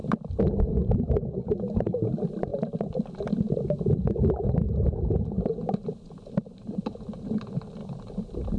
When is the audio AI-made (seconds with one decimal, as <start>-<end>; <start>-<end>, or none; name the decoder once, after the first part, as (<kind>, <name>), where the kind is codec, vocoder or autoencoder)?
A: 7.8-8.6 (vocoder, BigVGAN v2)